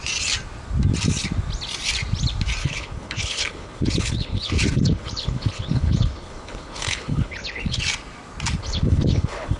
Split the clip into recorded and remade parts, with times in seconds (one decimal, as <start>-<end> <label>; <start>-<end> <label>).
0.0-2.6 recorded; 2.6-7.8 remade; 7.8-8.6 recorded; 8.6-9.6 remade